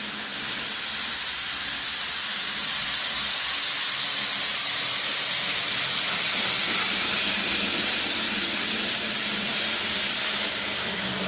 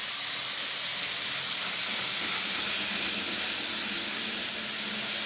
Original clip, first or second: second